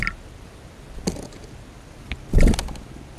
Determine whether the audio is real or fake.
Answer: real